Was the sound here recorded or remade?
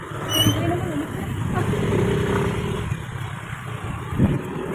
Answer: recorded